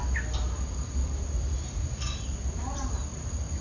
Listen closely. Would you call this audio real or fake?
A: real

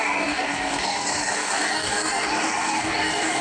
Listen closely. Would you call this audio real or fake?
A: fake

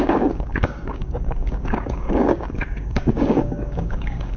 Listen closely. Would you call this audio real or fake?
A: fake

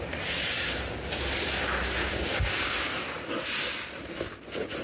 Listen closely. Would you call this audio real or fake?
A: real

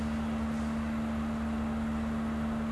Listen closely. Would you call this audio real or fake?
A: real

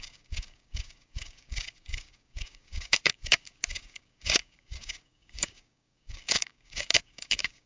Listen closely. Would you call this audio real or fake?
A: fake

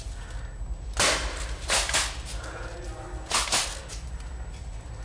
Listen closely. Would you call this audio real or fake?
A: real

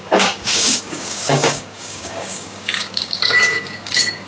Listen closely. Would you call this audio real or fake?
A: fake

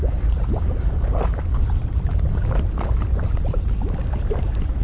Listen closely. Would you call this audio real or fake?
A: real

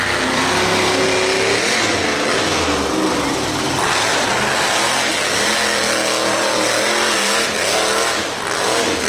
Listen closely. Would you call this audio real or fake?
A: real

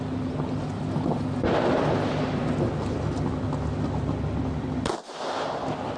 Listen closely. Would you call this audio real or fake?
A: real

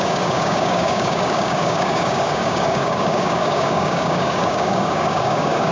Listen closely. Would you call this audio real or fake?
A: fake